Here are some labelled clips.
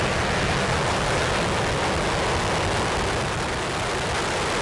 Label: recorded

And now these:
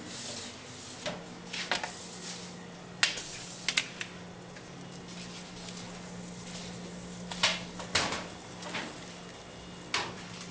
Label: recorded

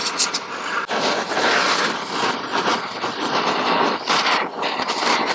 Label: recorded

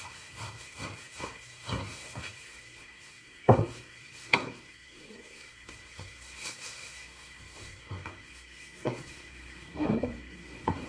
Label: remade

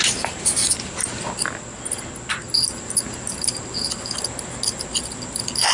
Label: recorded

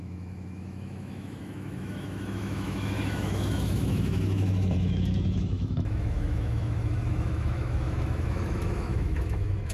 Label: remade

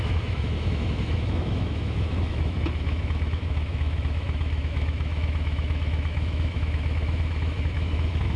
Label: remade